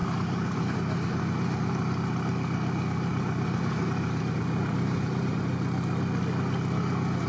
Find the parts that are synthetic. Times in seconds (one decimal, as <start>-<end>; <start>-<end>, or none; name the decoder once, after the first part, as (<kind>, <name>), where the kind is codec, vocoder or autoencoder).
0.0-0.8 (vocoder, BigVGAN v2); 3.1-5.4